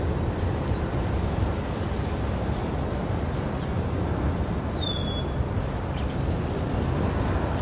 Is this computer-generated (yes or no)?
no